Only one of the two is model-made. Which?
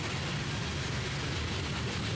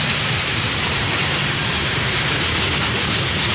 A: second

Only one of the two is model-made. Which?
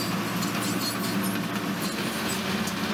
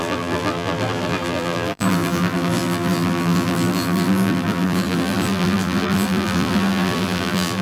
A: second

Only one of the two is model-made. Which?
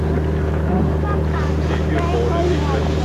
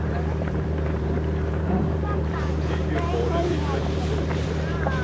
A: second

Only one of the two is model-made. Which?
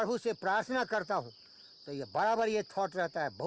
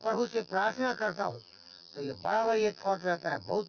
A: second